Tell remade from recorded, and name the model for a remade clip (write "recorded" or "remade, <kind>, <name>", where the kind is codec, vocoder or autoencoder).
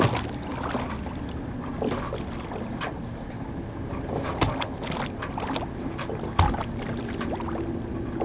recorded